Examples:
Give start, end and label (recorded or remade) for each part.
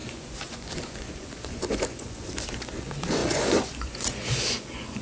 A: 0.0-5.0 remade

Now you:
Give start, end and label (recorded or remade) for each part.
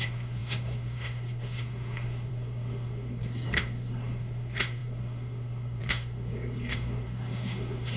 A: 0.0-8.0 remade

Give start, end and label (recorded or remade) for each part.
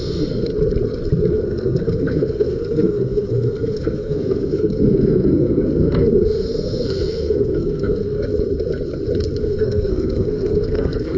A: 0.0-0.5 remade; 0.5-1.3 recorded; 1.3-8.3 remade; 8.3-9.4 recorded; 9.4-11.2 remade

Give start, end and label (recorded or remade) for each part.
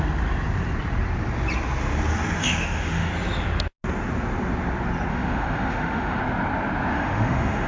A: 0.0-2.4 recorded; 2.4-3.1 remade; 3.1-5.1 recorded; 5.1-6.2 remade; 6.2-6.9 recorded; 6.9-7.7 remade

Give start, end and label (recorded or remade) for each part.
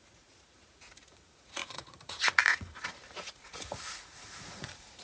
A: 0.0-5.0 remade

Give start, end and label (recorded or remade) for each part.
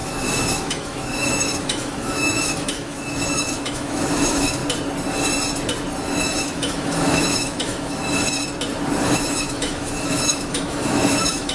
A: 0.0-4.6 remade; 4.6-6.0 recorded; 6.0-8.0 remade; 8.0-9.0 recorded; 9.0-11.5 remade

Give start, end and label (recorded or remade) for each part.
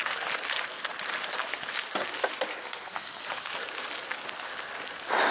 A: 0.0-2.6 recorded; 2.6-3.2 remade; 3.2-5.3 recorded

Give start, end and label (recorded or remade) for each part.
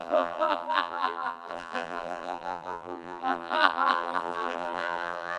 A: 0.0-5.4 remade